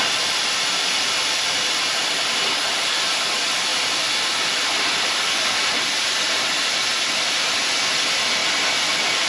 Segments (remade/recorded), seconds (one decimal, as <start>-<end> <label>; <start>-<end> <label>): 0.0-9.3 remade